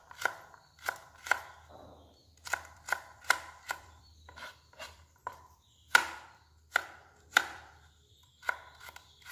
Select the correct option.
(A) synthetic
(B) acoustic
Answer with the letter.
A